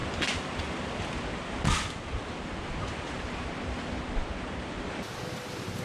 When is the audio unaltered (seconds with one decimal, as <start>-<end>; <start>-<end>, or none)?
0.0-5.8